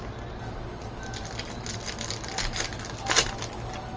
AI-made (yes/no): no